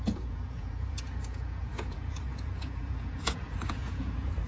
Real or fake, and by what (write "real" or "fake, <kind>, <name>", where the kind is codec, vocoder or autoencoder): fake, vocoder, Vocos